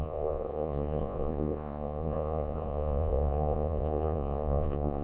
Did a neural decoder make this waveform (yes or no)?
yes